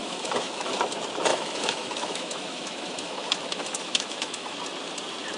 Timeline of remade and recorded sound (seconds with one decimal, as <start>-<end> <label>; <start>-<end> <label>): 0.0-0.7 remade; 0.7-1.3 recorded; 1.3-4.5 remade; 4.5-5.4 recorded